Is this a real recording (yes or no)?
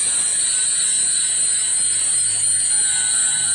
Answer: yes